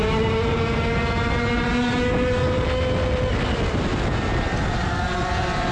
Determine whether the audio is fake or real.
real